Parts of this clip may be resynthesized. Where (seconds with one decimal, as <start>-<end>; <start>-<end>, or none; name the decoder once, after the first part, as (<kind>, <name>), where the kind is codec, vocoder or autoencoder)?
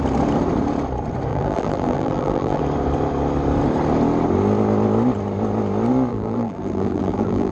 1.3-2.6 (vocoder, BigVGAN v2); 6.1-7.5